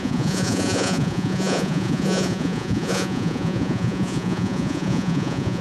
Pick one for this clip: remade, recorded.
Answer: remade